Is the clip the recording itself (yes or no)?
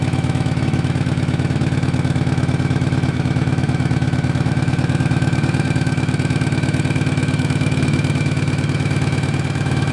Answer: no